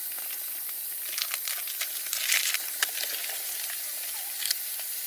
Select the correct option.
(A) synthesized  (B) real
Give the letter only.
B